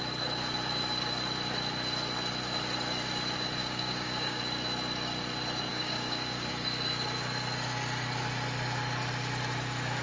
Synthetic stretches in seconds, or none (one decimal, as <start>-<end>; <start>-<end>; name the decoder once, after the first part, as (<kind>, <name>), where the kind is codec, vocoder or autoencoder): 3.6-4.4 (codec, DAC); 5.7-6.5